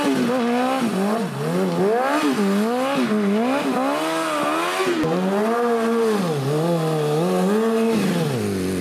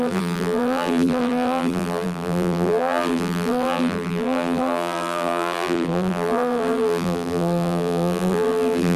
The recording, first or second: first